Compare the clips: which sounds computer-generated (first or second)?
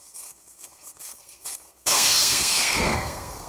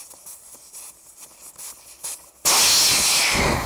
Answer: first